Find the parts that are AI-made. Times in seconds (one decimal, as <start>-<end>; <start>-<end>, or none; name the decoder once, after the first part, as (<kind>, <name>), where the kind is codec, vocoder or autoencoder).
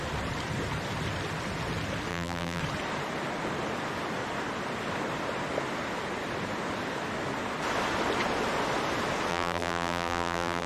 2.1-2.6 (vocoder, BigVGAN v2); 9.3-10.7